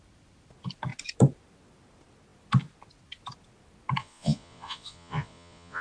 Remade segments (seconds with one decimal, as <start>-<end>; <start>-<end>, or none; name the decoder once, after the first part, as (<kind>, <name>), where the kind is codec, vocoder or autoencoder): 4.0-5.8 (vocoder, Vocos)